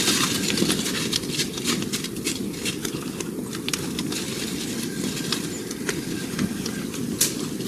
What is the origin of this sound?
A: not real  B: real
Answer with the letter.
B